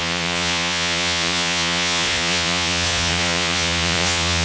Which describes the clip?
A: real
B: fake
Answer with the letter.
B